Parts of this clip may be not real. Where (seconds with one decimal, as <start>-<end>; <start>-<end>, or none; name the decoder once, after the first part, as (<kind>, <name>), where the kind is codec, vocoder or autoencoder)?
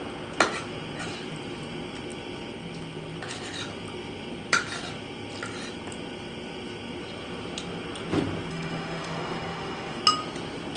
8.5-10.0 (autoencoder, DAC-VAE)